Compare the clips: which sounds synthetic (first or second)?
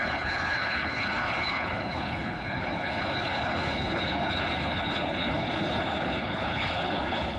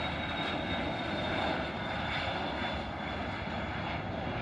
first